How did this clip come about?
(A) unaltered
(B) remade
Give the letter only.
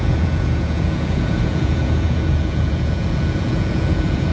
B